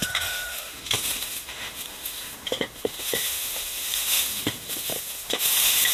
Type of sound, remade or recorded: remade